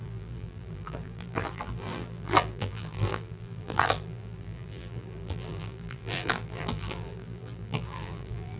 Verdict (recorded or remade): remade